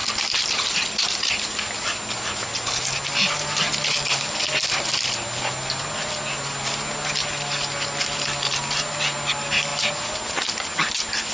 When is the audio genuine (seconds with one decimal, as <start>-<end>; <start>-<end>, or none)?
1.3-11.3